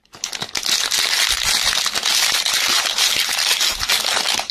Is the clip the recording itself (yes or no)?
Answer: yes